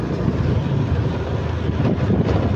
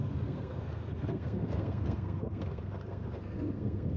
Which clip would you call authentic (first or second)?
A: first